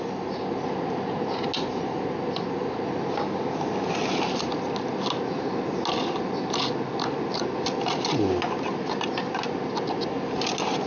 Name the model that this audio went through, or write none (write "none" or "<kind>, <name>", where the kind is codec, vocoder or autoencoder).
none